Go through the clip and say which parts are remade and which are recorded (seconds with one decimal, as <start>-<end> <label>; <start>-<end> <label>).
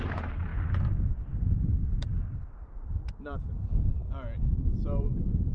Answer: 0.0-0.5 remade; 0.5-3.1 recorded; 3.1-4.0 remade; 4.0-4.6 recorded; 4.6-5.5 remade